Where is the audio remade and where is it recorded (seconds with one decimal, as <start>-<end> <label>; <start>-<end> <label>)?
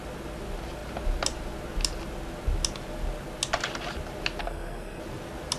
0.0-4.4 recorded; 4.4-5.0 remade; 5.0-5.6 recorded